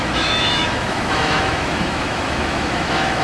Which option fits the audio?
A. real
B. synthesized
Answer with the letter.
B